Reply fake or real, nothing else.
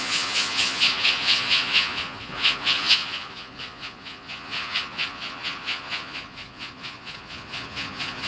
fake